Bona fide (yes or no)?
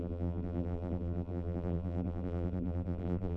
no